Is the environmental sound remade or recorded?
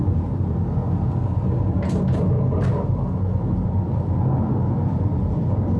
recorded